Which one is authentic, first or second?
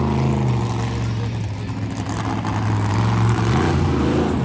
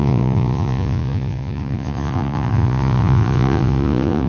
first